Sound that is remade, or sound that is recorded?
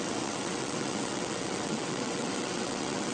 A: remade